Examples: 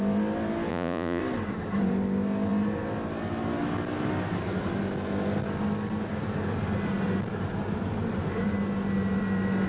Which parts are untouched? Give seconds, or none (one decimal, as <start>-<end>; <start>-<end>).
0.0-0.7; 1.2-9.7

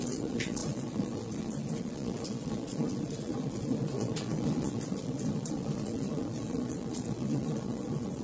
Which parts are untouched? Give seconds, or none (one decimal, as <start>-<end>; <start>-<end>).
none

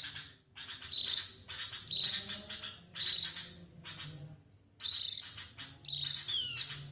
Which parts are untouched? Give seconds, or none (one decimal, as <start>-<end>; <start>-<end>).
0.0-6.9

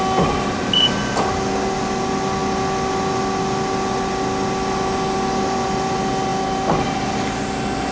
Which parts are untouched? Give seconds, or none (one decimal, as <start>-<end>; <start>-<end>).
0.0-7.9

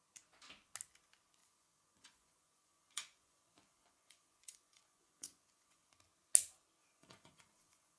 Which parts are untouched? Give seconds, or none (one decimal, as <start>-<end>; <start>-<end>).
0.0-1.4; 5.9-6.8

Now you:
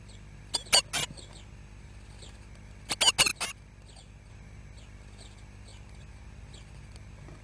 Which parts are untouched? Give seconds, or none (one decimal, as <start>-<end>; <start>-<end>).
0.0-7.4